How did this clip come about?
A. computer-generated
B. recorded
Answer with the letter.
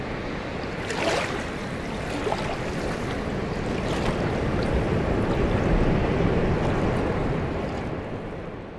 B